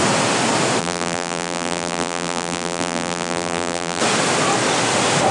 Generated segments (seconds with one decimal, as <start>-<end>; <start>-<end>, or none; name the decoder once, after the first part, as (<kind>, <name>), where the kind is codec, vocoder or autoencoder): 0.8-4.0 (vocoder, BigVGAN v2)